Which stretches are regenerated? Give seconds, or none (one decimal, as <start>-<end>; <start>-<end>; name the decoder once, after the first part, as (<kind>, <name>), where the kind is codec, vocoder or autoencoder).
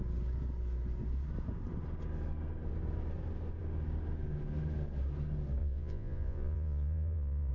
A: 5.6-7.5 (vocoder, Vocos)